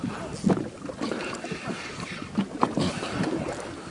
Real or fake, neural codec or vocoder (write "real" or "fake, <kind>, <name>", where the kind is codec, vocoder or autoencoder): real